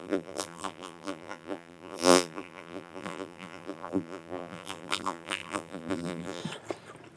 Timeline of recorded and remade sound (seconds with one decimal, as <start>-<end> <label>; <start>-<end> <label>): 0.0-6.4 remade; 6.4-7.2 recorded